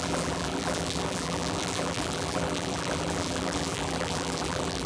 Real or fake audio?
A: fake